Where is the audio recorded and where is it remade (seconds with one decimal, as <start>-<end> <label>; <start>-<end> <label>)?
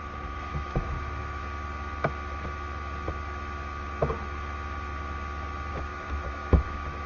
0.0-1.4 remade; 1.4-5.7 recorded; 5.7-7.1 remade